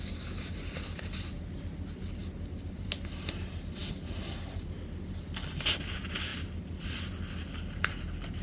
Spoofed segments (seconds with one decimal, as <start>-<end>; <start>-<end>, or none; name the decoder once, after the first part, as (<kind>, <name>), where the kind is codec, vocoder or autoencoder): none

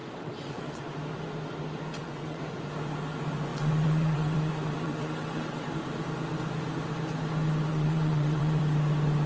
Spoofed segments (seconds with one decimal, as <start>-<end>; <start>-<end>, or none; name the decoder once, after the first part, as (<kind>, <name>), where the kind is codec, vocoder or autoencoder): 0.0-0.8 (vocoder, WaveNeXt); 2.0-2.6; 3.5-5.7; 7.7-8.6

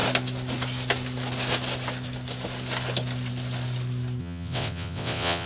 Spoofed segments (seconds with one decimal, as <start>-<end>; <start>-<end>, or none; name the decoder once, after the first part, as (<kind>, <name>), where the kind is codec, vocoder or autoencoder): 4.2-5.5 (vocoder, WaveNeXt)

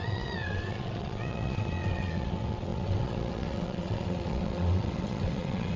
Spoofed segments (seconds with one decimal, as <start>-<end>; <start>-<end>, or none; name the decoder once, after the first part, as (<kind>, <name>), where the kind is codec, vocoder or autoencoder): 0.0-5.8 (vocoder, WaveNeXt)